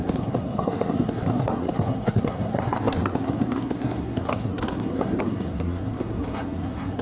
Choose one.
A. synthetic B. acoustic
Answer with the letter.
A